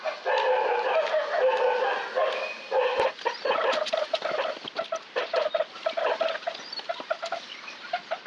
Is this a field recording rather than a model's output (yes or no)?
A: yes